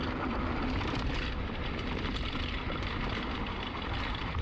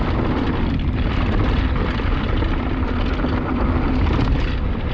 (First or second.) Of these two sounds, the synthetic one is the first